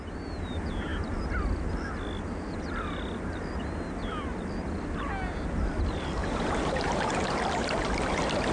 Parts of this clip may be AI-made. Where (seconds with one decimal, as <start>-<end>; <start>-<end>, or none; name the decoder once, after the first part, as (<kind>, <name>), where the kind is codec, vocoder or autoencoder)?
6.2-8.1 (vocoder, BigVGAN v2)

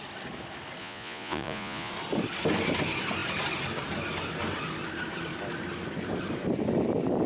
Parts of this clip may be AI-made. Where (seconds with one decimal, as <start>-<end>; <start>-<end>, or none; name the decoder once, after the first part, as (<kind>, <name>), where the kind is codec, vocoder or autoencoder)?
0.8-1.9 (vocoder, Vocos)